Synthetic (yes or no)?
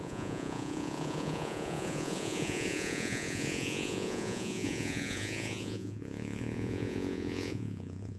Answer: yes